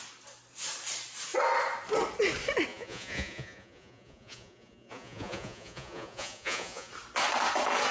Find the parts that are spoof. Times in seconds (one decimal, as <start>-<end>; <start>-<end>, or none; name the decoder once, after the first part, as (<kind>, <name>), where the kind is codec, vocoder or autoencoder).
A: 2.7-6.9 (vocoder, Vocos)